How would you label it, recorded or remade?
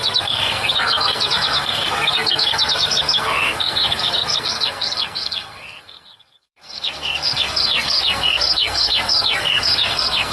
remade